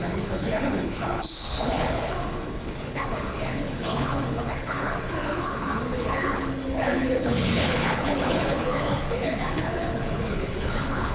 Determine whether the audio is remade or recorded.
remade